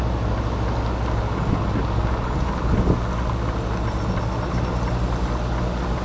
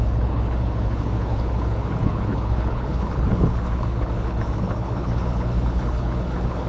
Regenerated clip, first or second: second